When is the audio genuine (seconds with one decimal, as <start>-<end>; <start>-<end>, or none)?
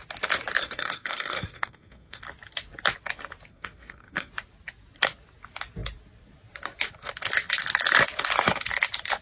0.0-0.6; 2.2-3.5; 4.3-9.2